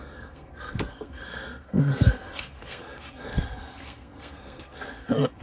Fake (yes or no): yes